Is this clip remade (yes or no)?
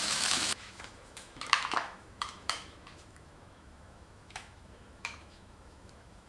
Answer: yes